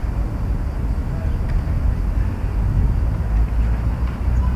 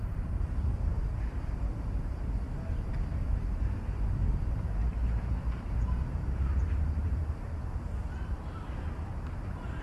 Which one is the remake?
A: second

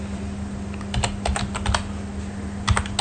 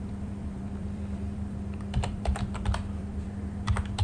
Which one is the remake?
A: second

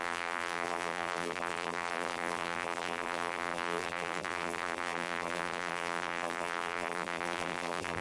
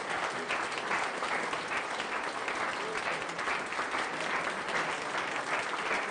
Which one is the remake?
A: first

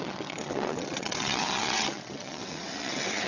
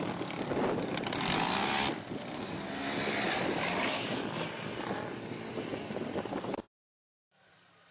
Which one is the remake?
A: first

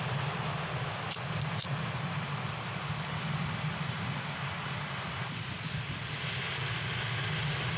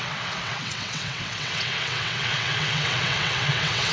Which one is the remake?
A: second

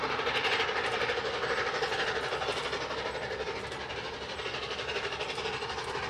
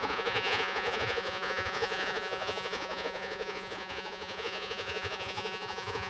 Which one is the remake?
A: second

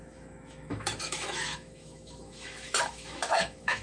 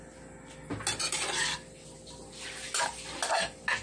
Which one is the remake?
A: first